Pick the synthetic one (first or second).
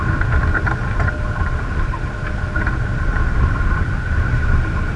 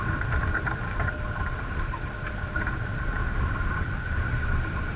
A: second